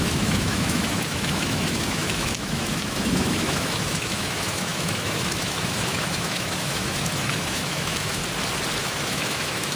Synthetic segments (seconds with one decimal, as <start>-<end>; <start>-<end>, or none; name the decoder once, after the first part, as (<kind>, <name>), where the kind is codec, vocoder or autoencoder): 0.0-8.2 (autoencoder, DAC-VAE); 8.8-9.8